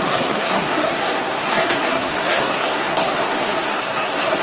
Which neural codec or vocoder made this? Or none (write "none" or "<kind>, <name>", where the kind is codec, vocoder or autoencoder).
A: codec, SNAC